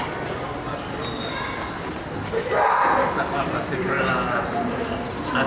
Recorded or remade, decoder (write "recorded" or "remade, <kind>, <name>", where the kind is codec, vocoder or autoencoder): recorded